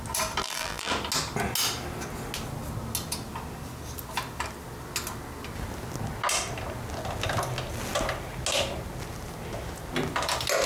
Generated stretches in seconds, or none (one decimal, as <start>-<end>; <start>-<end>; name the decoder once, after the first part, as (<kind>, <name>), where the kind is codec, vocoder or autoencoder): 0.4-0.9 (vocoder, BigVGAN v2)